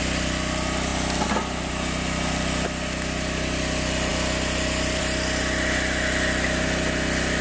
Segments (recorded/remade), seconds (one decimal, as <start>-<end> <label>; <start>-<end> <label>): 0.0-7.4 recorded